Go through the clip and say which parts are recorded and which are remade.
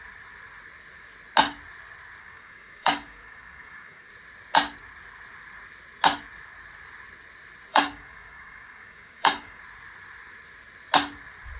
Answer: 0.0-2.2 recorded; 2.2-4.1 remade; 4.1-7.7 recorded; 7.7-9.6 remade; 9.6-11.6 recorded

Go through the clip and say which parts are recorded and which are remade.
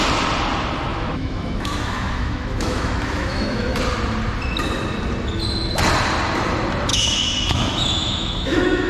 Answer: 0.0-0.9 recorded; 0.9-3.8 remade; 3.8-6.9 recorded; 6.9-8.9 remade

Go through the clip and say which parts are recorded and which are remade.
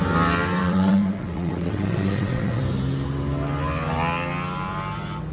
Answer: 0.0-0.6 recorded; 0.6-2.6 remade; 2.6-5.3 recorded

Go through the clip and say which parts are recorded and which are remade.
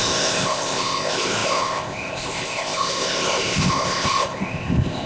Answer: 0.0-5.1 remade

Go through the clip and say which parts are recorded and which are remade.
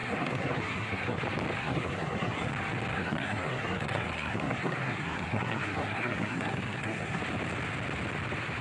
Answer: 0.0-1.2 remade; 1.2-1.6 recorded; 1.6-2.5 remade; 2.5-2.9 recorded; 2.9-7.2 remade; 7.2-8.6 recorded